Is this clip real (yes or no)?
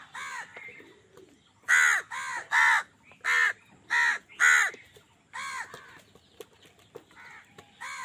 yes